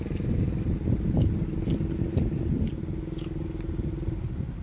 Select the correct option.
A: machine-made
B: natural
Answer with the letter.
B